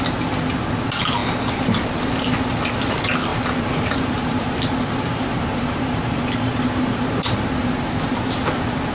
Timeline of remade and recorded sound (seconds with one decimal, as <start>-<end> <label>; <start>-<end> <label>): 0.0-3.3 recorded; 3.3-7.0 remade; 7.0-8.9 recorded